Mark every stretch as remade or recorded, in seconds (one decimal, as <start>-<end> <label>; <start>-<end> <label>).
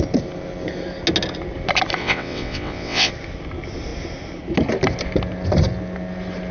0.0-2.0 recorded; 2.0-3.1 remade; 3.1-6.5 recorded